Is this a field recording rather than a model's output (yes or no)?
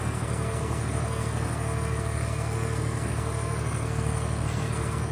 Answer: no